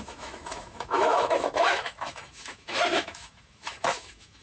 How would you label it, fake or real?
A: fake